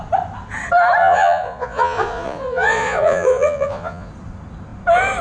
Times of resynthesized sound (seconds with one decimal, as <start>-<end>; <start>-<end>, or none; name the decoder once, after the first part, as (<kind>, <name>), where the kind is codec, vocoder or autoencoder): 1.0-4.1 (vocoder, Vocos)